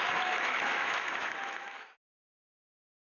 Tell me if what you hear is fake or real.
fake